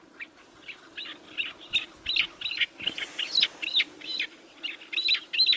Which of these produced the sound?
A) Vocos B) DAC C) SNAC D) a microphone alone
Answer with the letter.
D